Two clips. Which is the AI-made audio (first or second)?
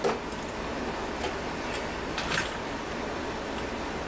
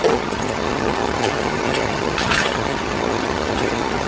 second